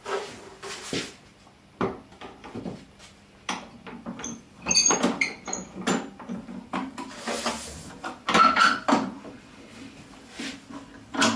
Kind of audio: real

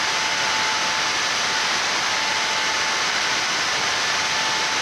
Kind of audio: real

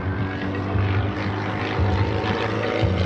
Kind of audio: real